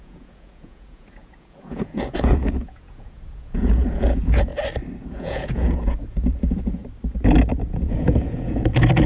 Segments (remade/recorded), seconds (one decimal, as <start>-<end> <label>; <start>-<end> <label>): 0.0-4.5 remade; 4.5-5.1 recorded; 5.1-6.8 remade; 6.8-7.5 recorded; 7.5-9.1 remade